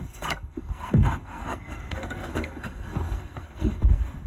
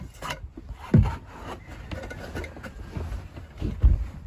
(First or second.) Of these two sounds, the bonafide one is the second